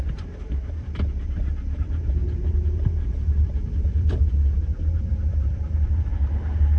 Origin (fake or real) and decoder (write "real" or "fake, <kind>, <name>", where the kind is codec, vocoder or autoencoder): fake, vocoder, BigVGAN v2